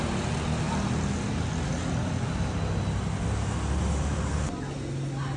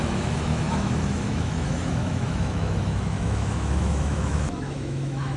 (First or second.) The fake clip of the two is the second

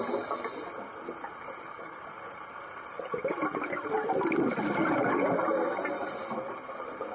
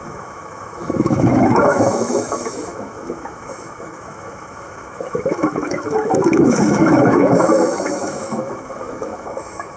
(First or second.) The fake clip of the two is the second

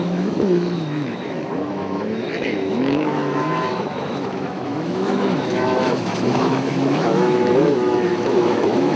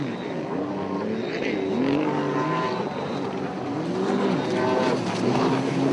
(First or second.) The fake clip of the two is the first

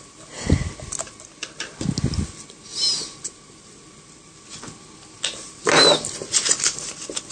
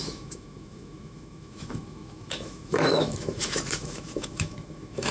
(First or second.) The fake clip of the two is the second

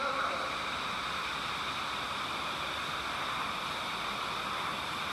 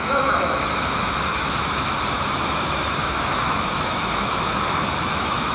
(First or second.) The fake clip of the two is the second